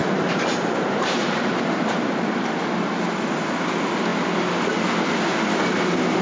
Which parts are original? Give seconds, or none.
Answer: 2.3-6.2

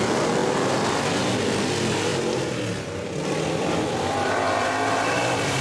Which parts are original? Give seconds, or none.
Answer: 0.0-5.6

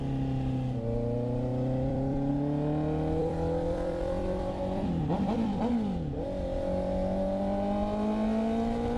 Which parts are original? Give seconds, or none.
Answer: 0.0-1.5; 2.3-3.2; 5.7-9.0

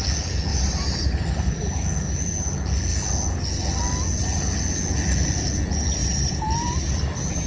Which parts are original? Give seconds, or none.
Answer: 0.0-0.5; 1.5-6.0; 6.9-7.5

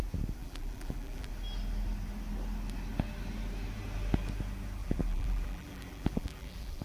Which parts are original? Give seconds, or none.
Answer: 0.0-0.4; 1.3-4.8